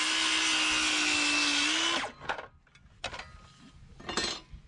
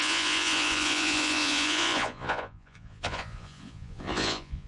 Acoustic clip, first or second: first